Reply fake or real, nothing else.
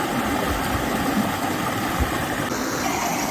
real